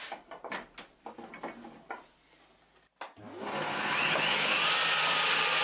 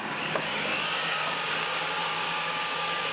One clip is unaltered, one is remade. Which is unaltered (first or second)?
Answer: first